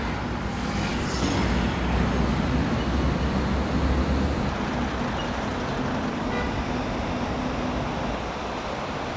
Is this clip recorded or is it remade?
recorded